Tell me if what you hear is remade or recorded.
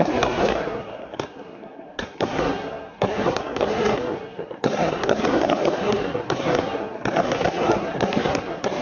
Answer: remade